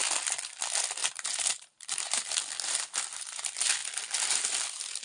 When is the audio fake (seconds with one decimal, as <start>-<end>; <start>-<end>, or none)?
1.0-2.3